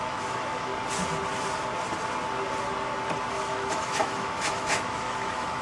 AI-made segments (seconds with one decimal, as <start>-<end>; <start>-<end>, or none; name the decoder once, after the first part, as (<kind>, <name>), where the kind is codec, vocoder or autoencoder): 0.0-0.7 (autoencoder, DAC-VAE); 3.3-5.6